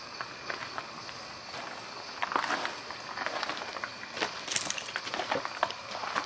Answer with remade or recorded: remade